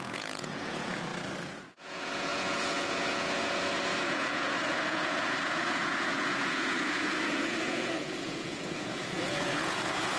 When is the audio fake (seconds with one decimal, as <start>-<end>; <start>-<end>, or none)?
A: 0.0-1.1; 1.6-10.2